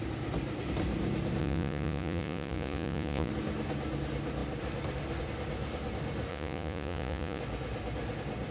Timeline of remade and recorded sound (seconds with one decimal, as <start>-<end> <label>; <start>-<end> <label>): 0.0-1.4 recorded; 1.4-3.3 remade; 3.3-6.3 recorded; 6.3-7.4 remade; 7.4-8.5 recorded